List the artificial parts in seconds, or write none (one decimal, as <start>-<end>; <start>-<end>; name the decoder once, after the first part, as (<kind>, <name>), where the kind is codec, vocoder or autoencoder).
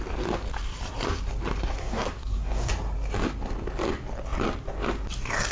1.8-2.7 (codec, SNAC)